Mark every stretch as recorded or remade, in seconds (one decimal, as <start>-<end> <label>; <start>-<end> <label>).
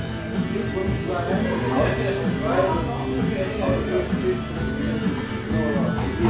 0.0-6.3 recorded